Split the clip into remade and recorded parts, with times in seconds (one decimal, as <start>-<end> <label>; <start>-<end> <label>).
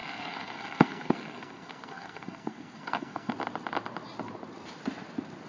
0.0-3.3 remade; 3.3-5.5 recorded